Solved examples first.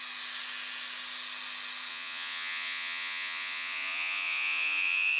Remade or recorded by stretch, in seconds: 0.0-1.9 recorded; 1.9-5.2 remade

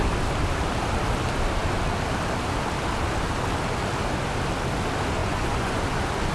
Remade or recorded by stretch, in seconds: 0.0-5.2 recorded; 5.2-5.8 remade; 5.8-6.3 recorded